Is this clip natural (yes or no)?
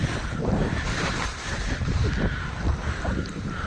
yes